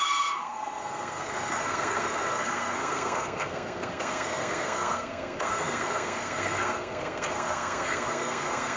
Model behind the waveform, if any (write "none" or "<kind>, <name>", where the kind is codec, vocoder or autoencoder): codec, SNAC